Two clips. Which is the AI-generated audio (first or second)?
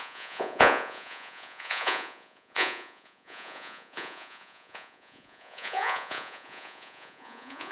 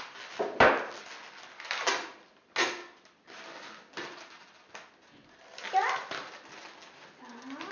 first